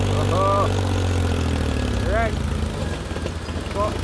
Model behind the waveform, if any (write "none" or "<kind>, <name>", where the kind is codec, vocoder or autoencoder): none